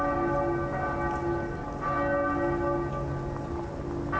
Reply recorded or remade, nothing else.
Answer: recorded